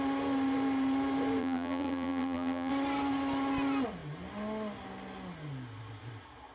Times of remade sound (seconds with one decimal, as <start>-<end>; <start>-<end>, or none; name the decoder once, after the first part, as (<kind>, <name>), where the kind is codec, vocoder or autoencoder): 1.4-2.7 (vocoder, BigVGAN v2)